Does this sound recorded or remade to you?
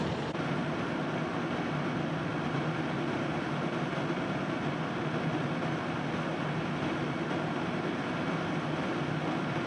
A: recorded